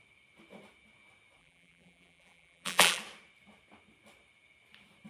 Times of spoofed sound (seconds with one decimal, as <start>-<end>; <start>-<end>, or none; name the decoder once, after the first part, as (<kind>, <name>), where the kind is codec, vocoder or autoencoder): 1.4-3.0 (vocoder, BigVGAN v2)